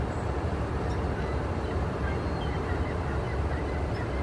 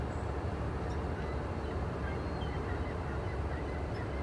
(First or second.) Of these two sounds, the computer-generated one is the first